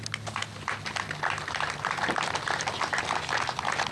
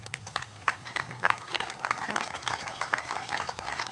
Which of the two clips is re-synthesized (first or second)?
second